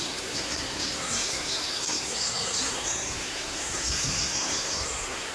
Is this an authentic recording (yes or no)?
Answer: no